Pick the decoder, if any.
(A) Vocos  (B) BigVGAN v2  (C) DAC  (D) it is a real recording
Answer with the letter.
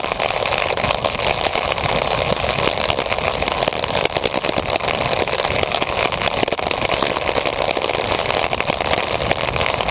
D